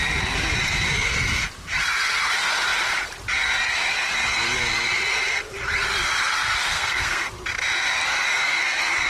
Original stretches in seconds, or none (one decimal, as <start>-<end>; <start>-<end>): 0.0-6.7; 7.3-9.1